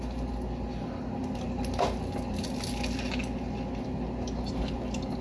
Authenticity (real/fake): real